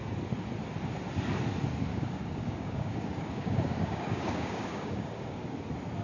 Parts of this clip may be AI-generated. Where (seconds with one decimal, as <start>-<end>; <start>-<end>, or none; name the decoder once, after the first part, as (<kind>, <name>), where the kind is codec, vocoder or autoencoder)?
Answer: 1.9-5.5 (codec, DAC)